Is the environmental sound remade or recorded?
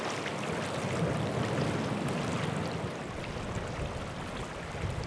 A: recorded